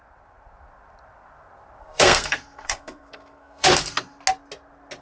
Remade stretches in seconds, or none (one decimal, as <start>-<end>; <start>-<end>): 1.8-3.7